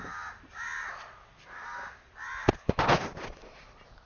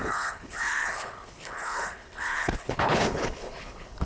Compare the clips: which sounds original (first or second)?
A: first